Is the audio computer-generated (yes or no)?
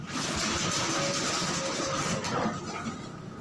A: no